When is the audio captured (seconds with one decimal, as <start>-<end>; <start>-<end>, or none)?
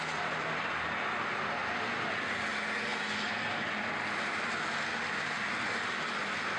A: 0.0-6.6